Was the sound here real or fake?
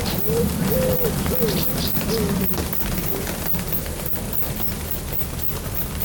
real